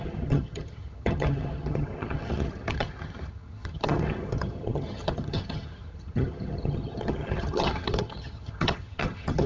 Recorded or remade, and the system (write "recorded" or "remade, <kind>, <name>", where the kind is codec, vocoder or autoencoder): remade, vocoder, HiFi-GAN